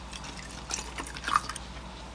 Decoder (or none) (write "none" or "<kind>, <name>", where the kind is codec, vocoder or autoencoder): none